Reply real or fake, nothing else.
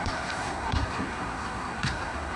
fake